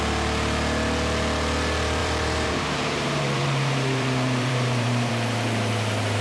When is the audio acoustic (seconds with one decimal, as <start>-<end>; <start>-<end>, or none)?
0.0-2.0; 5.1-6.2